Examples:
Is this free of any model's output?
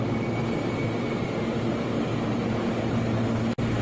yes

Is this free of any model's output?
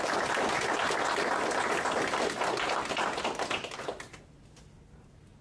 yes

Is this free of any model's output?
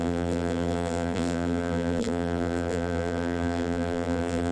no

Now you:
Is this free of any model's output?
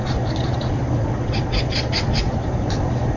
no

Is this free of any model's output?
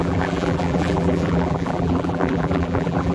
no